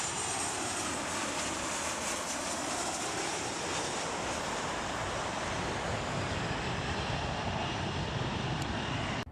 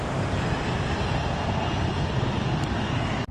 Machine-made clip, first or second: first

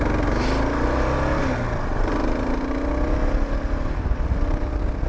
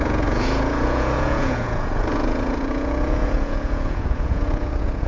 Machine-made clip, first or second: second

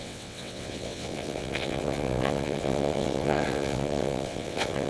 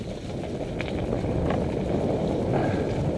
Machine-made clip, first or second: first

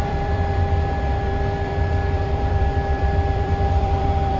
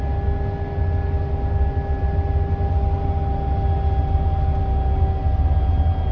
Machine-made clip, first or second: first